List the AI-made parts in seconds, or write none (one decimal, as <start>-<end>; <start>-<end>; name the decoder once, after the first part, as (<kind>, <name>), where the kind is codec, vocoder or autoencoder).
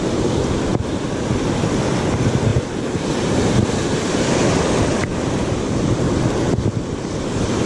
none